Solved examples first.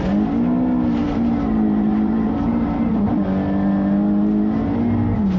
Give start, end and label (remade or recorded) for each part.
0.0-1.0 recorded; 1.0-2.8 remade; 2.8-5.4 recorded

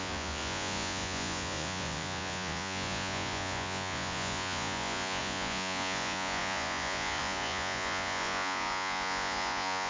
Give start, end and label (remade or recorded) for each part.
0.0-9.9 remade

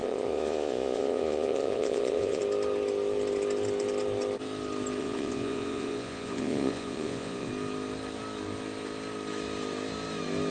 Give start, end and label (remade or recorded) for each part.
0.0-2.4 remade; 2.4-5.0 recorded; 5.0-7.5 remade; 7.5-10.5 recorded

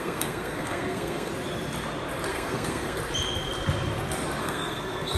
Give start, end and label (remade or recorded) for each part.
0.0-1.3 remade; 1.3-2.3 recorded; 2.3-3.0 remade; 3.0-4.4 recorded; 4.4-5.2 remade

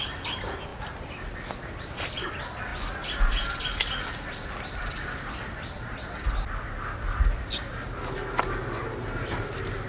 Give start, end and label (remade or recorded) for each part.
0.0-9.9 recorded

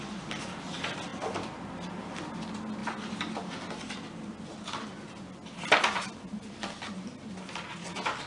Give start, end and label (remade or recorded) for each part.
0.0-8.3 recorded